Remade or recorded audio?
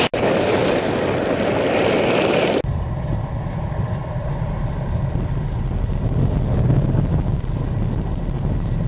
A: recorded